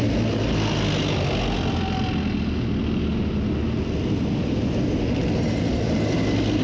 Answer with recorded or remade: recorded